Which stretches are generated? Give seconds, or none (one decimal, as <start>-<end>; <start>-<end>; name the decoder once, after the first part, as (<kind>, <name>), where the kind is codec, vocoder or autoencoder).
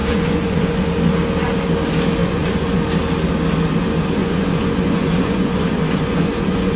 0.0-0.8 (vocoder, Vocos); 2.2-2.8; 4.2-6.8